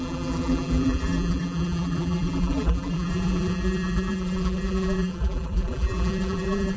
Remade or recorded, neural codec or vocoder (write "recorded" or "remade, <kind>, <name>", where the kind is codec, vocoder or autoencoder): remade, vocoder, BigVGAN v2